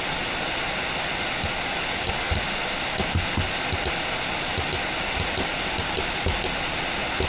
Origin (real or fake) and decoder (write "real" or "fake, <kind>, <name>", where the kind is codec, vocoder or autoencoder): real